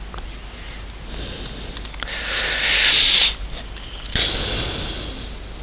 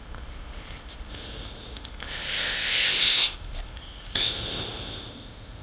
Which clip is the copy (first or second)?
second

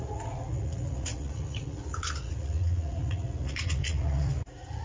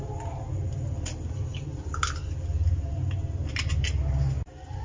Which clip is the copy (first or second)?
first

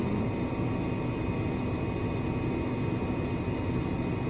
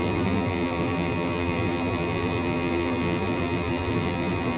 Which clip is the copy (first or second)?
second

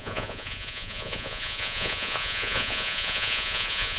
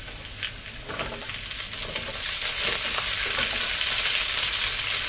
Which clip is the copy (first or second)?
first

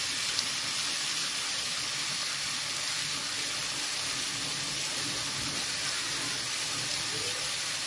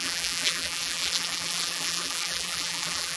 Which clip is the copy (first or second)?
second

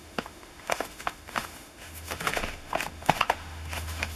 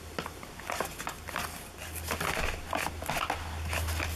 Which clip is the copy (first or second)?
first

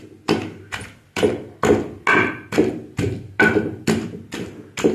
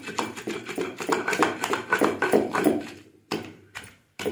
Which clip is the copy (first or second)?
second